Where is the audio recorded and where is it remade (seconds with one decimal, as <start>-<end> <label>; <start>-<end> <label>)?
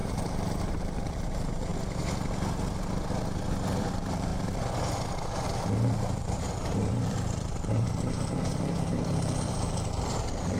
0.0-1.7 remade; 1.7-3.8 recorded; 3.8-4.3 remade; 4.3-5.3 recorded; 5.3-10.6 remade